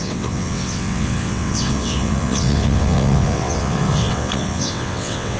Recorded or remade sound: remade